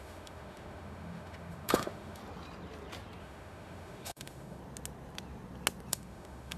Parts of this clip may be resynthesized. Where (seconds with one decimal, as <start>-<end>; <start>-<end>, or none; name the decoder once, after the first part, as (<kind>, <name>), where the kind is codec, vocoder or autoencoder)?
0.0-2.2 (autoencoder, DAC-VAE); 3.2-4.6; 5.9-6.6